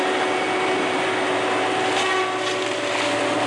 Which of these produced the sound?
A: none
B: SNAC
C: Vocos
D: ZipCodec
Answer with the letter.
A